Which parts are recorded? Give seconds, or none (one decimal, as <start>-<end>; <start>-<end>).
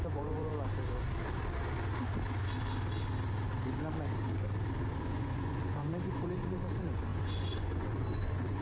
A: 0.5-4.9